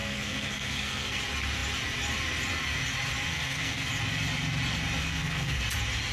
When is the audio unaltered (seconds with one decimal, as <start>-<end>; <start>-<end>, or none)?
1.2-3.3; 3.9-5.0; 5.6-6.1